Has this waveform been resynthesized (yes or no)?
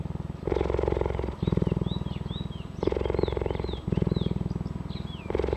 no